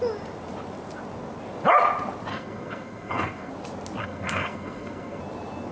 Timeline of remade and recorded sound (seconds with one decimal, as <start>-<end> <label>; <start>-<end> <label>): 0.0-2.3 recorded; 2.3-3.5 remade; 3.5-4.0 recorded; 4.0-5.2 remade; 5.2-5.7 recorded